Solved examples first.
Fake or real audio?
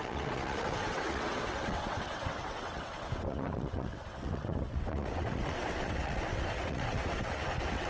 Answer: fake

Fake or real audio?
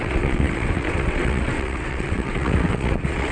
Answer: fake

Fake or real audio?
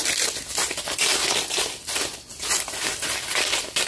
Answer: real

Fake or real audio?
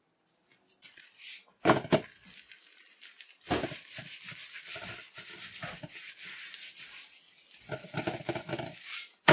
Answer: real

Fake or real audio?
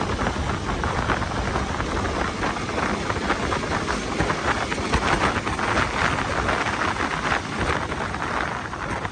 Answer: real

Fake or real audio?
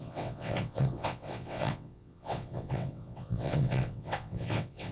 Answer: fake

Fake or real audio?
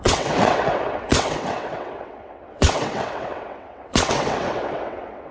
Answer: fake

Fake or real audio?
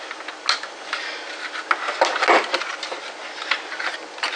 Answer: real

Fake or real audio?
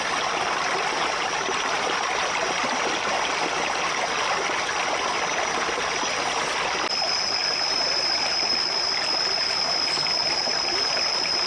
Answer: real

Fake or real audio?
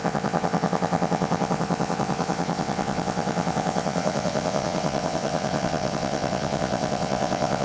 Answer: fake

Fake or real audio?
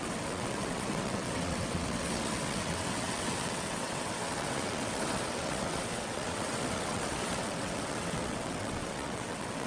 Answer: fake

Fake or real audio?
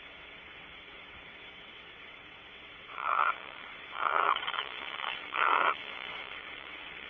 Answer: fake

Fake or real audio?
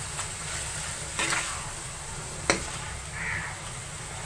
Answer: real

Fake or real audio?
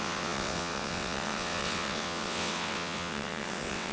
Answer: fake